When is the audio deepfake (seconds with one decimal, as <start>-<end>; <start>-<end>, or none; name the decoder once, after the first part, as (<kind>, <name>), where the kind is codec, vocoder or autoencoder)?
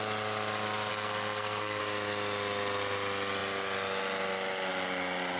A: 0.9-1.8 (codec, SNAC)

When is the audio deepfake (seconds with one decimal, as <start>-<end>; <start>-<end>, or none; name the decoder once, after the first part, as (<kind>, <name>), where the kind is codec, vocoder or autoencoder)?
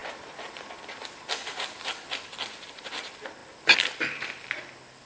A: none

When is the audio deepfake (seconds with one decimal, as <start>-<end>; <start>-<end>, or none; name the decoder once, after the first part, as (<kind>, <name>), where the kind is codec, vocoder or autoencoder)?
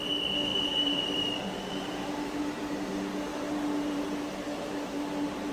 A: 0.5-2.4 (vocoder, BigVGAN v2); 3.3-5.5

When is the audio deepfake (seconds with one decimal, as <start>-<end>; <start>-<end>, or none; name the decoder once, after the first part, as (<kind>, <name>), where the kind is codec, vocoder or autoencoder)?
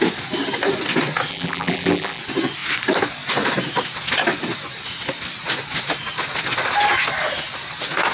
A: 1.3-2.2 (vocoder, BigVGAN v2)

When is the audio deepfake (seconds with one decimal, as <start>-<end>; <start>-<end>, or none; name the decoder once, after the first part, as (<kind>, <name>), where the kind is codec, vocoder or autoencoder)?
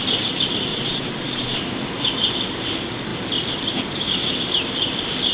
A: 0.7-1.6 (vocoder, Vocos)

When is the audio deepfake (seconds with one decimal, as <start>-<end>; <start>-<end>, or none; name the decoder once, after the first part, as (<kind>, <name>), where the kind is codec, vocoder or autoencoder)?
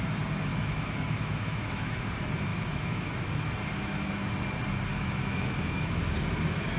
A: 0.5-2.0 (autoencoder, DAC-VAE); 2.5-3.1; 4.9-6.0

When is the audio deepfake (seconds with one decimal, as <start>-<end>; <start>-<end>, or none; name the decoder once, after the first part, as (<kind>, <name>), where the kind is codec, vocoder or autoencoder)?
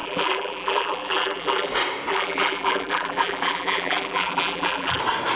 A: 0.0-1.7 (vocoder, BigVGAN v2); 2.1-5.0